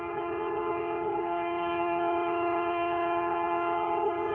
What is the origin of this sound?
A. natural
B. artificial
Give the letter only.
B